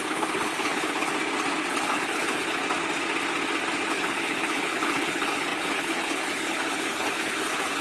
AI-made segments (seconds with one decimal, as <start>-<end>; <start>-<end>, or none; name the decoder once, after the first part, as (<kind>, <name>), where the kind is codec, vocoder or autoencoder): 0.0-1.1 (codec, HILCodec); 1.7-2.6; 3.9-7.8